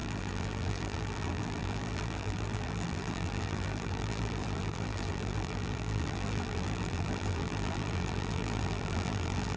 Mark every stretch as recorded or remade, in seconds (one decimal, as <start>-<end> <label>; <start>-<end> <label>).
0.0-9.6 remade